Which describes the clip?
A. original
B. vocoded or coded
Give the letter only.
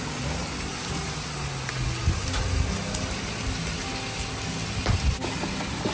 A